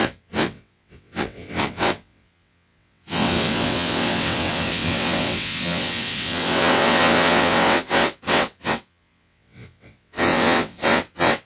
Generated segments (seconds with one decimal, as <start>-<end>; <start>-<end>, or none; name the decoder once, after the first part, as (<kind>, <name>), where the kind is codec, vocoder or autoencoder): 0.0-11.5 (vocoder, WaveNeXt)